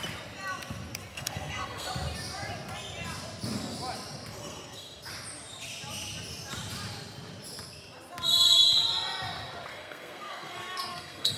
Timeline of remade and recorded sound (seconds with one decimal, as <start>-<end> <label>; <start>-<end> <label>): 0.0-1.1 recorded; 1.1-1.9 remade; 1.9-4.4 recorded; 4.4-5.1 remade; 5.1-9.7 recorded; 9.7-11.4 remade